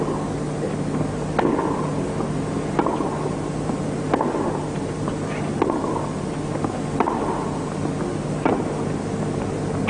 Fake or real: real